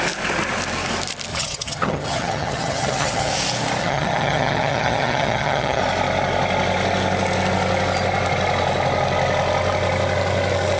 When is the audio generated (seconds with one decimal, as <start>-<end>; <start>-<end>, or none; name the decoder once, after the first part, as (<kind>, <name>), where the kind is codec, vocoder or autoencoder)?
1.3-3.3 (vocoder, HiFi-GAN); 3.8-5.8